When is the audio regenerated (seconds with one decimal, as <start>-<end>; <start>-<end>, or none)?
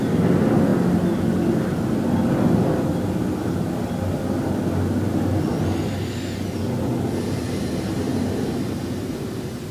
none